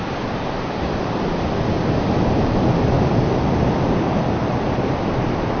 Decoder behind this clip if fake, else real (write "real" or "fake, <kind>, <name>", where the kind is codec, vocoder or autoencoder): real